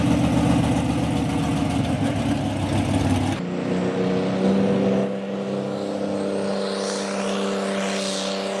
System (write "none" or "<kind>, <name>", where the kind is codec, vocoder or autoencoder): none